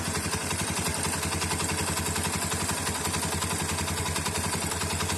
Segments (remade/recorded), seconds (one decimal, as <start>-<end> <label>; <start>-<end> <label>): 0.0-0.9 remade; 0.9-4.0 recorded; 4.0-5.2 remade